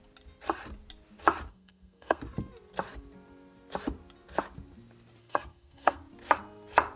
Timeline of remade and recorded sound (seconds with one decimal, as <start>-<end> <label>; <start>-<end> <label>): 0.0-1.5 recorded; 1.5-2.2 remade; 2.2-5.2 recorded; 5.2-6.0 remade; 6.0-7.0 recorded